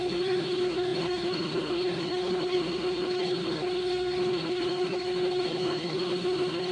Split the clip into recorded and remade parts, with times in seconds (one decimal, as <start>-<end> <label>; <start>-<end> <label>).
0.0-6.7 remade